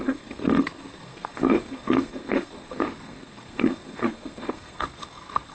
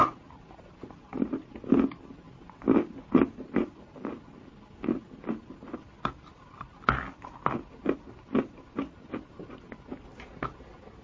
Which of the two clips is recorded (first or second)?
second